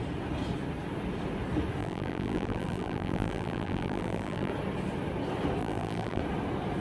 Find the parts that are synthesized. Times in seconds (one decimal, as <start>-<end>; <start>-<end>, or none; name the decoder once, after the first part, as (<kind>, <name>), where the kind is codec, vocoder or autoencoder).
1.8-4.5 (vocoder, BigVGAN v2); 5.6-6.2